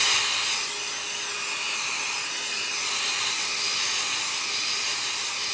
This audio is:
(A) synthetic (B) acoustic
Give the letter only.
B